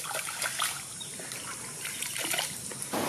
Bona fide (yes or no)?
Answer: no